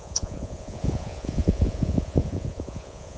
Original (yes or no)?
no